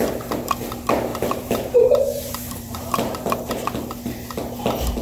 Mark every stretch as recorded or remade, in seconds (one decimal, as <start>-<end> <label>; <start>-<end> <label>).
0.0-1.1 recorded; 1.1-3.5 remade; 3.5-5.0 recorded